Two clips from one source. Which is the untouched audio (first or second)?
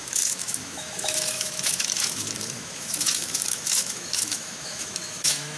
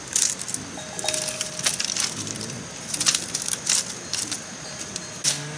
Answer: second